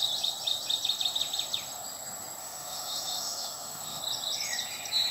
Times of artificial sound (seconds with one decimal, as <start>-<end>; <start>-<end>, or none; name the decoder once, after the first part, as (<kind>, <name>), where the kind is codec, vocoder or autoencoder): 2.4-4.0 (autoencoder, DAC-VAE)